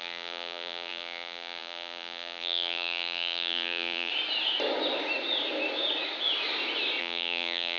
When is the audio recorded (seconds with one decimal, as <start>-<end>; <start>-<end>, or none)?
4.1-7.0